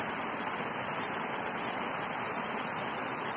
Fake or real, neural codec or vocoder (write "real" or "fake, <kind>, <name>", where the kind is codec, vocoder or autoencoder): real